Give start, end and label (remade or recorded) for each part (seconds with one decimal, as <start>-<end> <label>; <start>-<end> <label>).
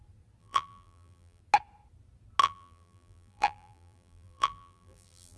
0.0-0.4 recorded; 0.4-1.4 remade; 1.4-2.4 recorded; 2.4-5.4 remade